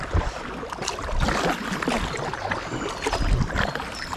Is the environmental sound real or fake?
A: real